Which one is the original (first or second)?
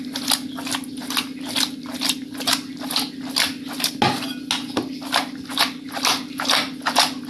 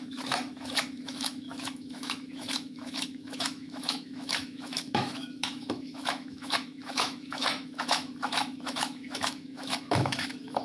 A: first